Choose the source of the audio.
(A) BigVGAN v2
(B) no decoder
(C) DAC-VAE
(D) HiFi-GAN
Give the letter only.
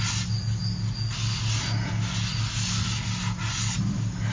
B